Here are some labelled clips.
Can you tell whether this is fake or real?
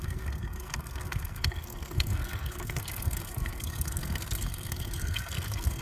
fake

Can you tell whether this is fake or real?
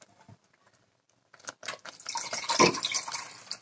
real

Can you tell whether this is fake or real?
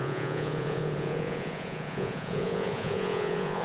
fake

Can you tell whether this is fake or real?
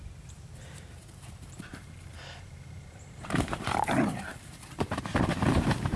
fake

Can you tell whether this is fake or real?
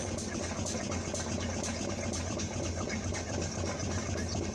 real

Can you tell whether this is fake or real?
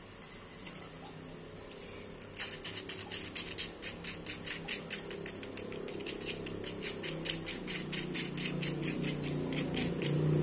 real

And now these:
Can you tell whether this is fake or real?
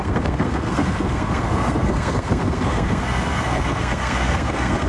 fake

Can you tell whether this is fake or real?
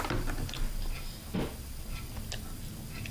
real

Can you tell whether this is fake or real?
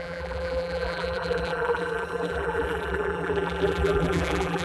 fake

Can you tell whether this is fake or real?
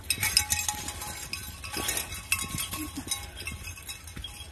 real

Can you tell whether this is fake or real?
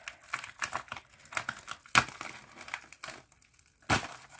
real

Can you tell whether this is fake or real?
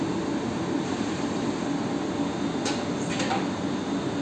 real